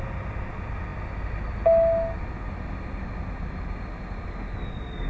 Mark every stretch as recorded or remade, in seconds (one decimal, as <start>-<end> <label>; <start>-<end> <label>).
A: 0.0-5.1 recorded